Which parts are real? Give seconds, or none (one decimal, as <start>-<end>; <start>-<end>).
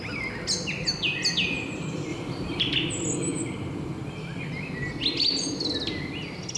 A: 0.0-2.1; 2.6-6.6